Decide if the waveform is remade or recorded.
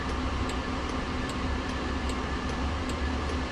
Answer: recorded